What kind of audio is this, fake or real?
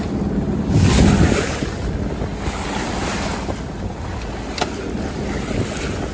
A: real